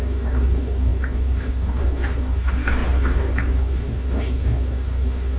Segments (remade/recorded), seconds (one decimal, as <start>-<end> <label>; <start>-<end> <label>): 0.0-5.4 remade